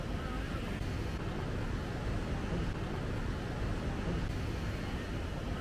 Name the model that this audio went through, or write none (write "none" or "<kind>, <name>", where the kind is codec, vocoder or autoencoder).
none